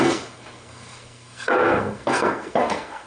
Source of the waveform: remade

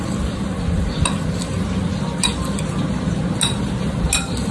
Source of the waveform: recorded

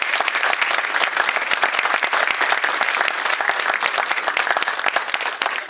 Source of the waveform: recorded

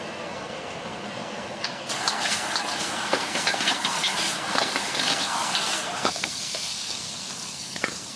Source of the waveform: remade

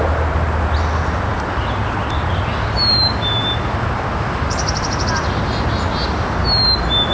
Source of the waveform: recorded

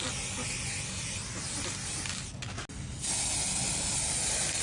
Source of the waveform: recorded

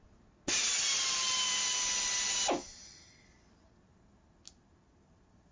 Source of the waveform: recorded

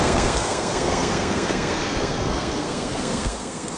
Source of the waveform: remade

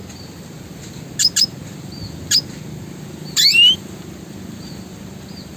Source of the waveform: recorded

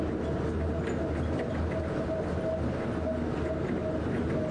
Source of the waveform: recorded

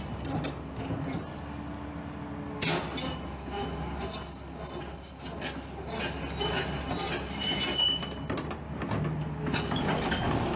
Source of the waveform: recorded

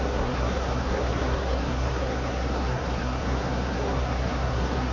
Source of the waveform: remade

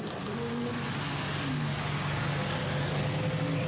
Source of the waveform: recorded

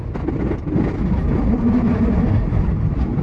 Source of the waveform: recorded